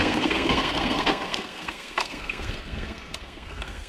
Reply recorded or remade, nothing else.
remade